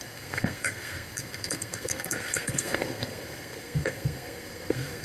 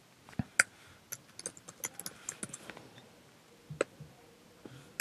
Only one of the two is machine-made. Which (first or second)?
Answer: first